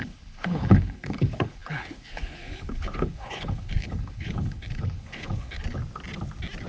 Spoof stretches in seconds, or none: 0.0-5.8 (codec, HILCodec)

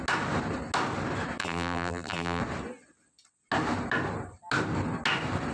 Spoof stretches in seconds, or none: 1.4-2.4 (vocoder, BigVGAN v2)

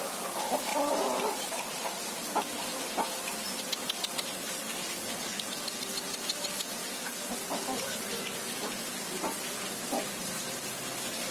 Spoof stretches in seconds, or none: 3.8-5.0 (vocoder, BigVGAN v2)

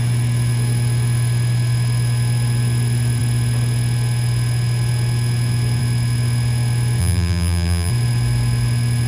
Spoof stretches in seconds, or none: 7.0-7.9 (vocoder, BigVGAN v2)